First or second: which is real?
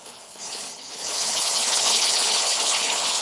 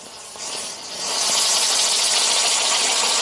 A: second